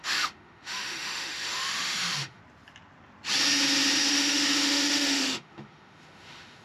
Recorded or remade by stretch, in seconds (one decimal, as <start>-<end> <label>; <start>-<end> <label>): 0.0-2.4 remade; 2.4-4.0 recorded; 4.0-6.6 remade